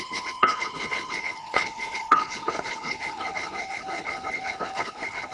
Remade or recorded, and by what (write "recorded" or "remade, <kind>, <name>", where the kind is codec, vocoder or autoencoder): remade, codec, HILCodec